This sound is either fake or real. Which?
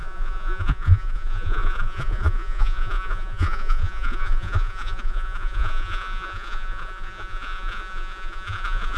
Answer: fake